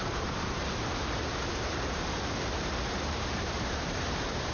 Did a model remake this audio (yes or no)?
yes